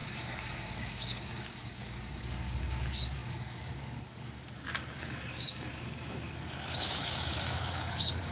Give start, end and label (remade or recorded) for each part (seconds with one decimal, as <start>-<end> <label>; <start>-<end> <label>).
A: 0.0-8.3 remade